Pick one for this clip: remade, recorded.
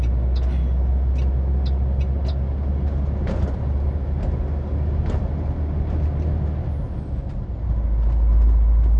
recorded